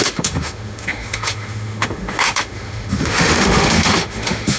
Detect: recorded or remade remade